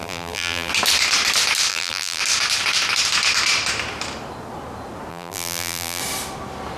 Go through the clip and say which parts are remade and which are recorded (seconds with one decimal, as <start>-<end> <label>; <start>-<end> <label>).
0.0-0.7 remade; 0.7-1.7 recorded; 1.7-2.2 remade; 2.2-5.1 recorded; 5.1-6.0 remade; 6.0-6.8 recorded